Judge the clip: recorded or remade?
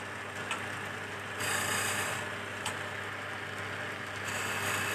recorded